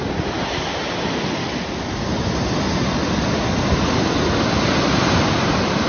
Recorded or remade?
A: recorded